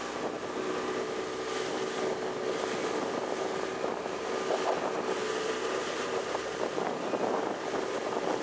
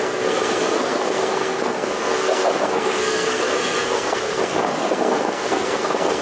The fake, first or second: second